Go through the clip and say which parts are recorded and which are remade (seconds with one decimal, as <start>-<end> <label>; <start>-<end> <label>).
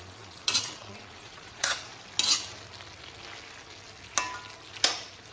0.0-1.9 remade; 1.9-5.3 recorded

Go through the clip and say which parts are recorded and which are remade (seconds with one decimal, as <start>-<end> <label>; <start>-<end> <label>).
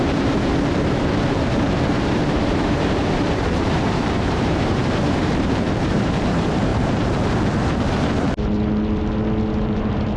0.0-6.7 remade; 6.7-9.6 recorded; 9.6-10.2 remade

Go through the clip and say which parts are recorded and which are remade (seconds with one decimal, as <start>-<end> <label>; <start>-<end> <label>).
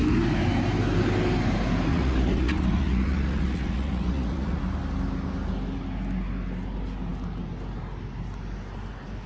0.0-1.9 recorded; 1.9-4.6 remade; 4.6-9.3 recorded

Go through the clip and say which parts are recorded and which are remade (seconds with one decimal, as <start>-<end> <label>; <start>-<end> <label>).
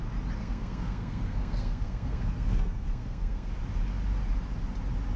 0.0-0.4 recorded; 0.4-3.5 remade; 3.5-5.2 recorded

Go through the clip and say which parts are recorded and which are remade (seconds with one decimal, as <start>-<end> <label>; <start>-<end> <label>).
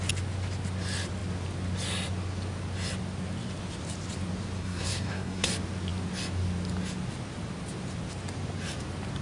0.0-4.6 recorded; 4.6-5.5 remade; 5.5-9.2 recorded